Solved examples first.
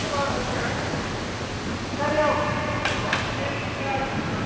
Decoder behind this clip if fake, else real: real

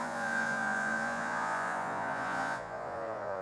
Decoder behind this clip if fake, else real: fake, vocoder, Vocos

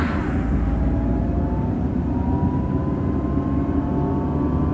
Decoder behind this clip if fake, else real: real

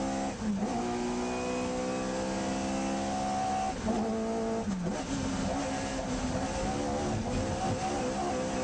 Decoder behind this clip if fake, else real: real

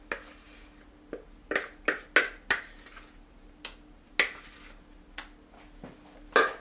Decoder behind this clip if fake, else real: real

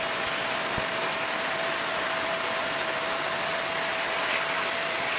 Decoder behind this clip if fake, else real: real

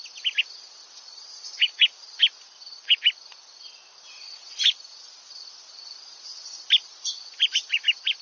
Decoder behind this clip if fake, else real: real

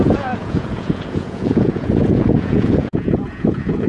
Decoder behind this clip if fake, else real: fake, vocoder, Vocos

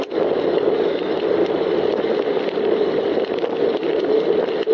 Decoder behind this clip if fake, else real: real